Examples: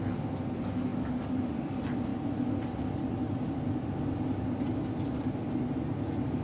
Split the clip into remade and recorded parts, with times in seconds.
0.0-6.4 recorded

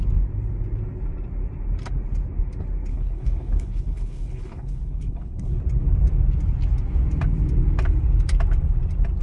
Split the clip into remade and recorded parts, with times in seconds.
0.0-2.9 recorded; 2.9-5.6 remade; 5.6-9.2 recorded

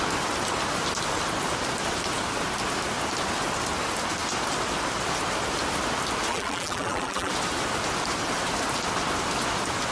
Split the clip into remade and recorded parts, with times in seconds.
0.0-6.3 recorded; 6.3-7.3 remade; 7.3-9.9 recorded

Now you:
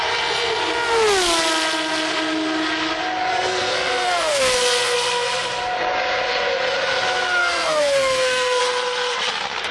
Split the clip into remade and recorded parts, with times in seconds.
0.0-3.3 recorded; 3.3-4.4 remade; 4.4-7.4 recorded; 7.4-8.6 remade; 8.6-9.7 recorded

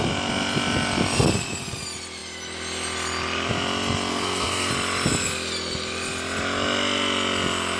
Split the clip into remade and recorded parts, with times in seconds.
0.0-4.1 recorded; 4.1-4.7 remade; 4.7-7.8 recorded